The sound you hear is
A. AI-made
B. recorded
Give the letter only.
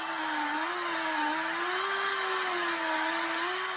B